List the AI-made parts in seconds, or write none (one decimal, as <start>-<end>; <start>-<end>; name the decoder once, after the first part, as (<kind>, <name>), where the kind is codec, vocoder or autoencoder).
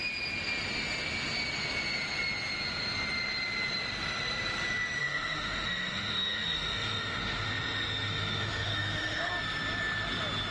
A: 5.0-9.3 (autoencoder, DAC-VAE)